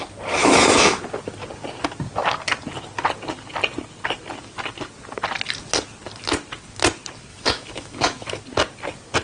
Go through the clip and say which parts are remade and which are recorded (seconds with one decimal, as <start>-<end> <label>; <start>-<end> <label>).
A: 0.0-0.4 recorded; 0.4-1.0 remade; 1.0-7.3 recorded; 7.3-8.4 remade; 8.4-9.2 recorded